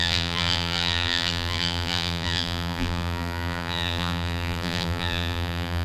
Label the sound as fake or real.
fake